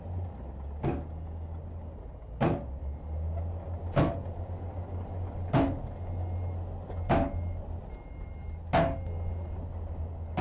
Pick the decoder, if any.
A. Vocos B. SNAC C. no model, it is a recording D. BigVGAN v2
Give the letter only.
C